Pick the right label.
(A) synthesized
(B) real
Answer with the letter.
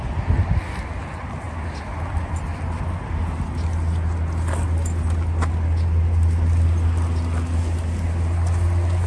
B